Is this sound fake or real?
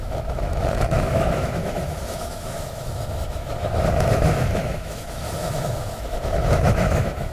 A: fake